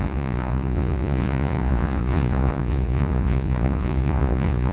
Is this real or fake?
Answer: fake